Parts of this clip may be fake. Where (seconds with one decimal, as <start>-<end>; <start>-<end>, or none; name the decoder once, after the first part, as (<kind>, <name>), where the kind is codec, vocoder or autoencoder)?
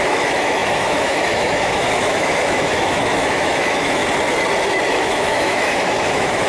0.0-4.0 (autoencoder, DAC-VAE); 4.9-6.5